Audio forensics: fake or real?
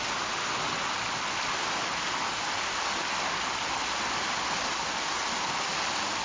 real